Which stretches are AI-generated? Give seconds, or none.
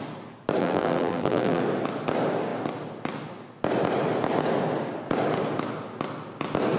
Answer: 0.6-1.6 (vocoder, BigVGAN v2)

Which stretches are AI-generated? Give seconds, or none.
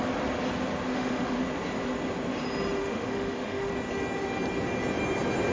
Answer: 0.9-1.4 (autoencoder, DAC-VAE); 2.8-3.7